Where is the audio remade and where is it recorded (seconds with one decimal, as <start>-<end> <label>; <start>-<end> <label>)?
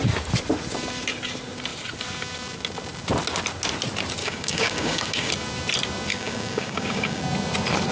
0.0-4.2 recorded; 4.2-5.3 remade; 5.3-6.1 recorded; 6.1-7.2 remade; 7.2-7.9 recorded